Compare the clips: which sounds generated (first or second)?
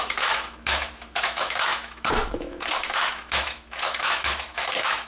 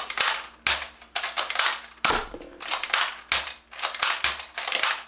first